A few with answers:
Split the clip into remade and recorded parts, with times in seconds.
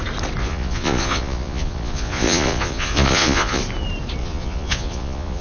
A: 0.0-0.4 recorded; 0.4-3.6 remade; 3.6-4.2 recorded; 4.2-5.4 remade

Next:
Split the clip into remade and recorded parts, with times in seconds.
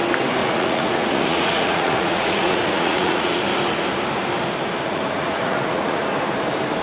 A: 0.0-0.4 recorded; 0.4-3.4 remade; 3.4-4.9 recorded; 4.9-6.0 remade; 6.0-6.8 recorded